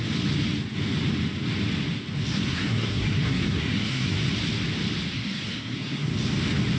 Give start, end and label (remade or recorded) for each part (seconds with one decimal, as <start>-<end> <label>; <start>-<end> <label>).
0.0-2.3 recorded; 2.3-4.2 remade; 4.2-5.1 recorded; 5.1-6.1 remade; 6.1-6.8 recorded